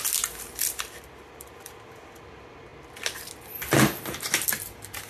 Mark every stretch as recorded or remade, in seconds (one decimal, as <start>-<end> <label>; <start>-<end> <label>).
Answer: 0.0-5.1 recorded